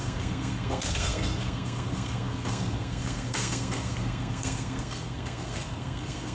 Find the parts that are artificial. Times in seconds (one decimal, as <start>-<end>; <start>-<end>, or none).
0.0-6.3

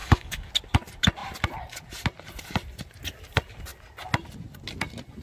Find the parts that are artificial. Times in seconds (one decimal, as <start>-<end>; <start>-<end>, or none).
0.0-0.5

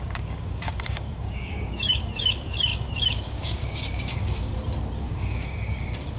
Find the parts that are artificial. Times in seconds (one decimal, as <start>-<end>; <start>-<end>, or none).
0.0-4.5; 5.0-6.2

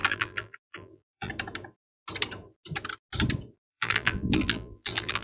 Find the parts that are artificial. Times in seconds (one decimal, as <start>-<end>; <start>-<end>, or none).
0.0-1.3; 3.7-5.2

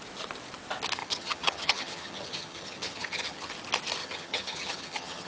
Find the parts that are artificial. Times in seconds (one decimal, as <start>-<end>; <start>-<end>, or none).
1.0-3.5; 4.0-5.3

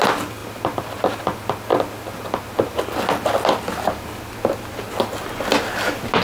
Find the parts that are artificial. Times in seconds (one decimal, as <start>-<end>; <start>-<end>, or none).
none

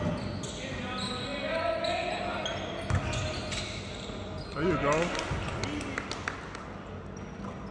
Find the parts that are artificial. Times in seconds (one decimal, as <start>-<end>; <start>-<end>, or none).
none